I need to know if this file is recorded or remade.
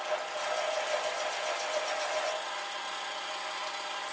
recorded